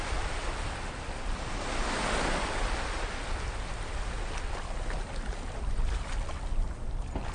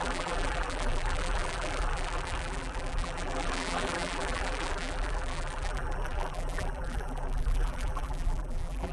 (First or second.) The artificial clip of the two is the second